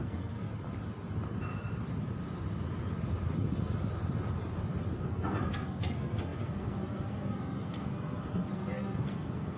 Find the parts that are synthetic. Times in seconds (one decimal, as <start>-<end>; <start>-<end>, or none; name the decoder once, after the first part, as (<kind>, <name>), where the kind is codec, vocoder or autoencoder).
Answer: 0.0-0.5 (codec, SNAC); 5.0-9.6

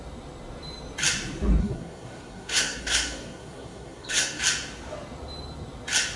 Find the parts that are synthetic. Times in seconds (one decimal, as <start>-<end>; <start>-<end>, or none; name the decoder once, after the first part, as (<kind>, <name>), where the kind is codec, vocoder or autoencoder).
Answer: 1.6-4.4 (codec, SNAC)

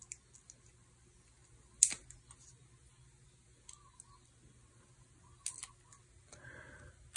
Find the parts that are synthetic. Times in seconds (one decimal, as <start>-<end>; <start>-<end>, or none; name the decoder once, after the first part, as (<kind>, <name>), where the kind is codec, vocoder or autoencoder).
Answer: none

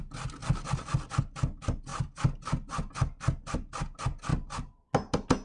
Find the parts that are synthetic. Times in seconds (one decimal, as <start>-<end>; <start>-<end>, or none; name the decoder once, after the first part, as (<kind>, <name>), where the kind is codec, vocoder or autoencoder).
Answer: 0.4-1.2 (vocoder, BigVGAN v2)

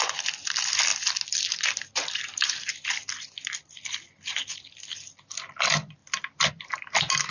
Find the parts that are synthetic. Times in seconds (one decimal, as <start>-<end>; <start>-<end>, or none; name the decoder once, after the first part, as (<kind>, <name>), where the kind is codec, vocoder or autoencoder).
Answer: none

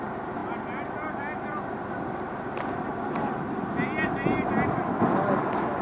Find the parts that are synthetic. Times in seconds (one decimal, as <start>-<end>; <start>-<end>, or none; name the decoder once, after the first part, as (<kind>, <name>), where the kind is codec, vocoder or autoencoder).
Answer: none

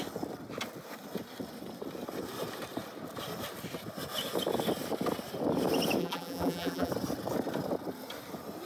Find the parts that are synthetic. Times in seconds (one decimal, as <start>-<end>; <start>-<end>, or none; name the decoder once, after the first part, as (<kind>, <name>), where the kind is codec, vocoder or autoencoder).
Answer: 6.0-6.9 (vocoder, BigVGAN v2)

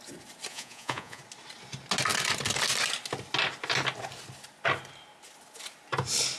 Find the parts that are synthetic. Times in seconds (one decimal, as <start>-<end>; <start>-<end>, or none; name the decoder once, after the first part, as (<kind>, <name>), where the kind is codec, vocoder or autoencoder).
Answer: 0.5-1.2 (vocoder, Vocos)